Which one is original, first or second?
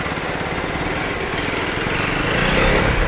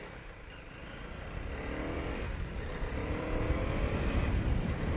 first